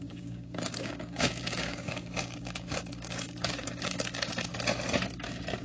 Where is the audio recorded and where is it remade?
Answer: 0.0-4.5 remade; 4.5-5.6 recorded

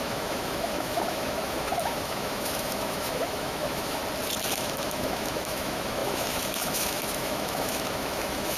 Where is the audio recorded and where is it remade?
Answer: 0.0-4.0 remade; 4.0-4.5 recorded; 4.5-8.6 remade